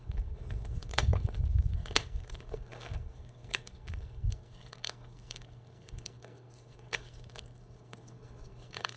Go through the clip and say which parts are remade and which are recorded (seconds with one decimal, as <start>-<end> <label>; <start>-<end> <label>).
0.0-9.0 remade